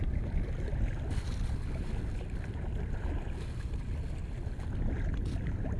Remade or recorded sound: recorded